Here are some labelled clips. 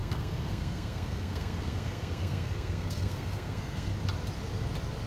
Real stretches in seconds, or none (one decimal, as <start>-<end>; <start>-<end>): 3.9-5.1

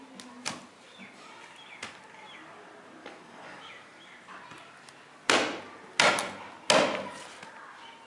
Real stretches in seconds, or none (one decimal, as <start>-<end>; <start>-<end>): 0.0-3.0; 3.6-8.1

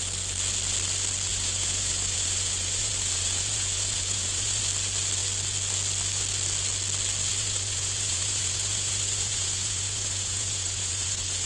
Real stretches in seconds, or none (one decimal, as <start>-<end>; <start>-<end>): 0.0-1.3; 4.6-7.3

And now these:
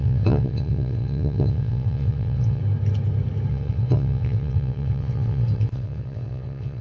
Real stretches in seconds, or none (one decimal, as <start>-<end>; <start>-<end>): 2.6-3.5